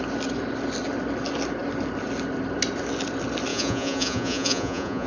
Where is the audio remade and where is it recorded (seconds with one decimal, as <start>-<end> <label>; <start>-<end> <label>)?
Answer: 0.0-3.5 recorded; 3.5-5.1 remade